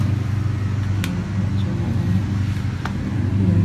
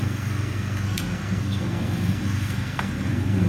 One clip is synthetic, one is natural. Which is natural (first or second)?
first